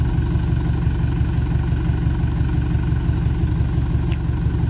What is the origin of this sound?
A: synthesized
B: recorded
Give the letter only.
B